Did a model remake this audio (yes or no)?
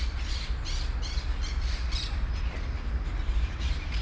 no